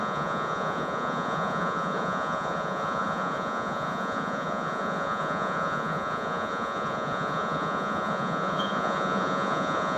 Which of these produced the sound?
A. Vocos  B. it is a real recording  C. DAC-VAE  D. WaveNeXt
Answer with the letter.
A